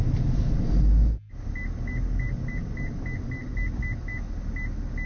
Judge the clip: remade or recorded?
recorded